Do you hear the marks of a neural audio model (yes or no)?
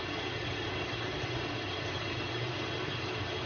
no